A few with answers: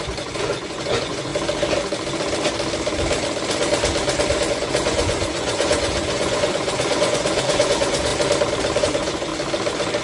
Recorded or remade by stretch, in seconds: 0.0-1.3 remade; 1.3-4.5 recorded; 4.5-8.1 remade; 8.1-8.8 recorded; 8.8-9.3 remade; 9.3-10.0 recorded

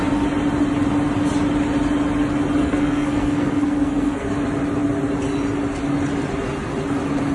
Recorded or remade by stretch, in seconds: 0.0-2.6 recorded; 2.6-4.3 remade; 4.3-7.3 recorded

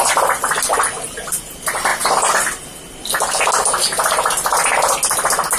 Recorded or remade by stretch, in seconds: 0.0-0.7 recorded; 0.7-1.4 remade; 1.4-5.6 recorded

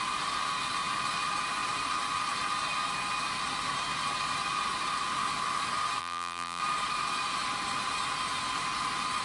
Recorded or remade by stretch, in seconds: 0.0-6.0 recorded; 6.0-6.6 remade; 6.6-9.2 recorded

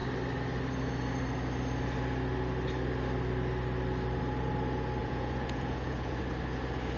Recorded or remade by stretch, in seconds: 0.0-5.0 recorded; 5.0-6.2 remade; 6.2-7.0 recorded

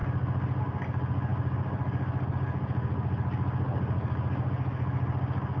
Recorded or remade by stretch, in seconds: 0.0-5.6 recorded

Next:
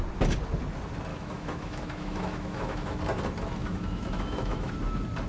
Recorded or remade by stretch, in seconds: 0.0-1.1 recorded; 1.1-3.0 remade; 3.0-3.6 recorded; 3.6-4.7 remade; 4.7-5.3 recorded

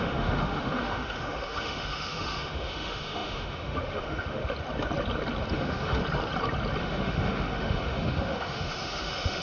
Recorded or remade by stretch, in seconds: 0.0-4.4 remade; 4.4-5.5 recorded; 5.5-6.0 remade; 6.0-6.8 recorded; 6.8-9.4 remade